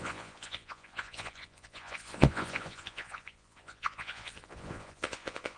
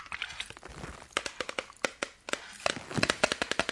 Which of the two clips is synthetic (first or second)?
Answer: first